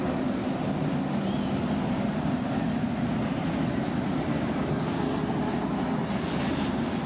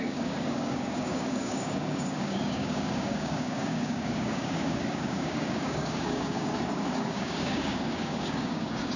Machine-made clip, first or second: second